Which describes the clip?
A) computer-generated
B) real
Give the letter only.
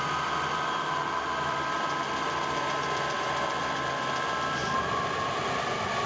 A